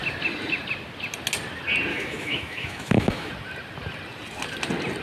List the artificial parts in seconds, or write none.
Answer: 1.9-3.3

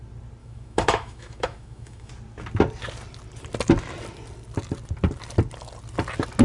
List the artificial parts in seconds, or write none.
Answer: 0.4-2.1

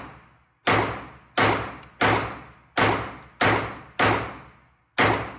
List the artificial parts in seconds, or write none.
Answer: none